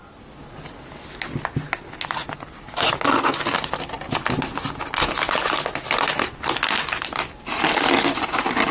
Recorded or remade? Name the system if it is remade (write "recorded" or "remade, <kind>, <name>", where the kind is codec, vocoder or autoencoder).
recorded